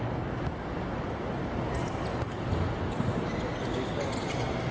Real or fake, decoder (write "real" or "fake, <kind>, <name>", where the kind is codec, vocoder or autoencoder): real